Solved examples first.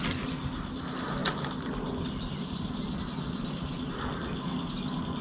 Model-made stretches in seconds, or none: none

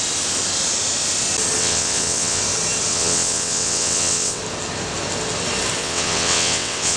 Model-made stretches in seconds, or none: 1.6-2.4; 2.9-4.4; 5.8-7.0

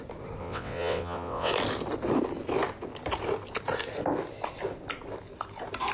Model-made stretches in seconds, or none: 0.4-1.5